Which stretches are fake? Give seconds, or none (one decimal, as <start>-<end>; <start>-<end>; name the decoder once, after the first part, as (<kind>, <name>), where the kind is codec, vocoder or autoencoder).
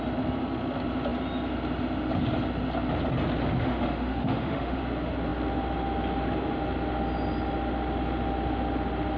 3.6-4.8 (autoencoder, DAC-VAE)